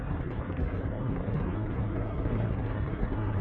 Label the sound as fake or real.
fake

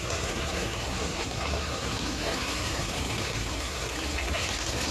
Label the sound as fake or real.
fake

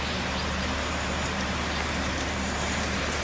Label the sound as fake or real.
fake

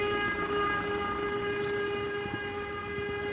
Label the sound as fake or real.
real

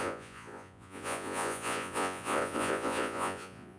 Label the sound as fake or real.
fake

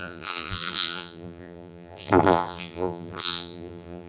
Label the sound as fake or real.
fake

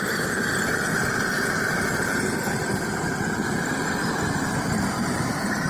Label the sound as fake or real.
real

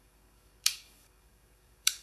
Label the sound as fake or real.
fake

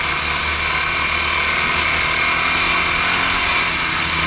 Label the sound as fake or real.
real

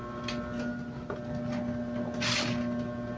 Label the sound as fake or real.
real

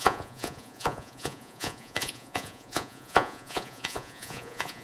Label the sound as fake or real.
fake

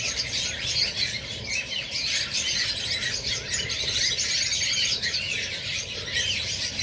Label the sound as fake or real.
real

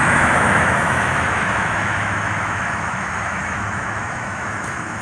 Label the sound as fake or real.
fake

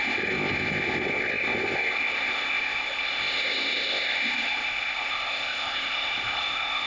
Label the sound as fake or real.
fake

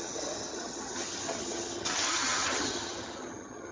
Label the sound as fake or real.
fake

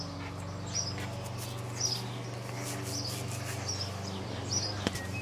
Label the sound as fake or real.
real